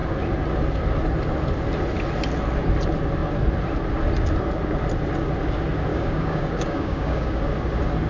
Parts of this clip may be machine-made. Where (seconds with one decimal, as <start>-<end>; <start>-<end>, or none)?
5.9-7.4